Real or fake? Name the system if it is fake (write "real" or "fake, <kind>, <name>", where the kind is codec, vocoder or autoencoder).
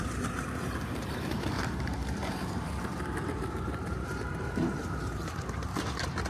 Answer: fake, vocoder, BigVGAN v2